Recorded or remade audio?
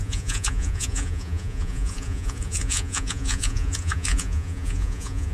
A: remade